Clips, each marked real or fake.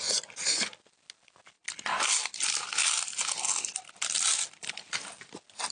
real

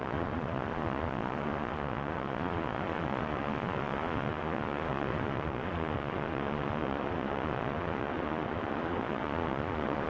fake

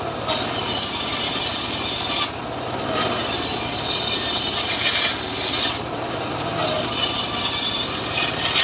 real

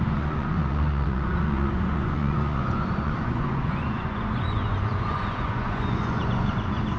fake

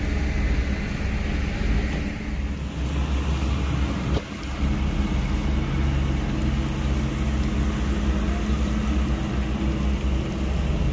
real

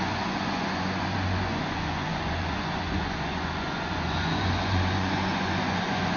fake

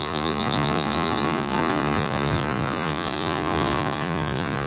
fake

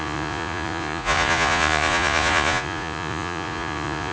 fake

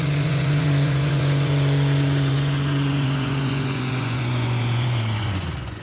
fake